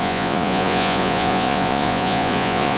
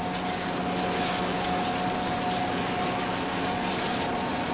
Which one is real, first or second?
second